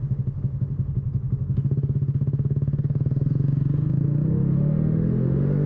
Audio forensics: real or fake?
fake